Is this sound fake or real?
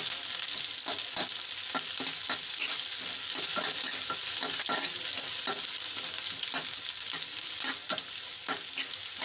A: real